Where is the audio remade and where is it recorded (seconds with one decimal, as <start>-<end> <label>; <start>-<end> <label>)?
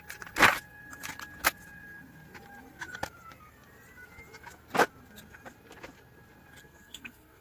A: 0.0-6.6 recorded; 6.6-7.4 remade